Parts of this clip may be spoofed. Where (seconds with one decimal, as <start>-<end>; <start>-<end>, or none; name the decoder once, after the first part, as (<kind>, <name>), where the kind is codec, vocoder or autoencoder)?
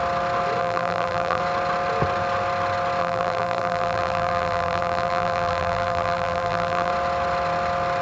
0.6-1.4 (vocoder, BigVGAN v2); 3.0-6.9